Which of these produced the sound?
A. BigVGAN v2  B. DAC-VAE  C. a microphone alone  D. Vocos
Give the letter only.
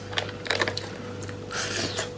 C